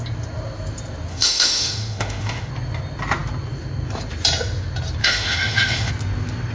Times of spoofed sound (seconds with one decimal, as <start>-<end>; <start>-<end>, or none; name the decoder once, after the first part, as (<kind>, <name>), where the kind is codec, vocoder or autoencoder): 1.1-2.5 (autoencoder, DAC-VAE); 5.0-5.9

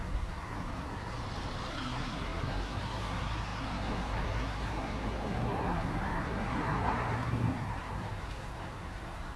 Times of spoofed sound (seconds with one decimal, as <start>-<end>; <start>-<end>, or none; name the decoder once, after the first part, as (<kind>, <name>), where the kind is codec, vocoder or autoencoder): 0.0-1.2 (codec, SNAC); 1.7-9.4

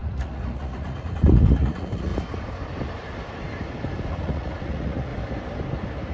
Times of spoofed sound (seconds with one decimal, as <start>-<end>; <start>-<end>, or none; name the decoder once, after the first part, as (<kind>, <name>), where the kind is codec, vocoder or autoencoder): 0.0-2.1 (vocoder, Vocos); 4.1-5.1

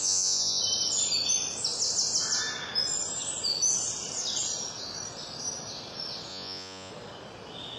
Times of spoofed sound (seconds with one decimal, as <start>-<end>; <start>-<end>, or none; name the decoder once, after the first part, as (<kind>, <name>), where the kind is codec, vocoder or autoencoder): 0.0-0.6 (vocoder, Vocos); 6.3-6.9

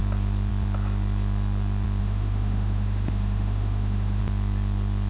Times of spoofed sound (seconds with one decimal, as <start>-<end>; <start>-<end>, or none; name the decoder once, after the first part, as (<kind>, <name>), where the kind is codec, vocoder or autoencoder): 2.0-4.2 (autoencoder, DAC-VAE)